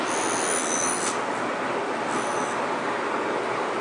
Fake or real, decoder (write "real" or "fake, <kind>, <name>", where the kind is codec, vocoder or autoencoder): real